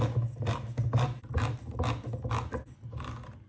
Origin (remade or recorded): recorded